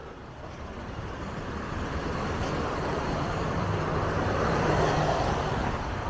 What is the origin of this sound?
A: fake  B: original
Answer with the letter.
A